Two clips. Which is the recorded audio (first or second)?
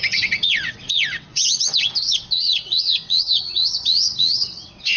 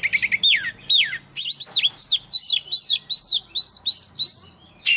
second